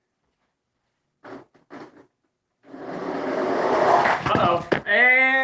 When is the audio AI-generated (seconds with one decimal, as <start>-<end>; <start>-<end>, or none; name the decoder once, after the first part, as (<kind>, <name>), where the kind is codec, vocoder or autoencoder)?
none